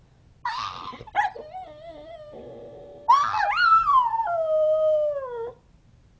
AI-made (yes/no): no